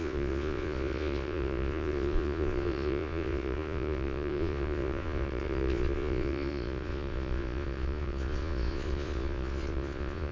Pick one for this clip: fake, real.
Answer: fake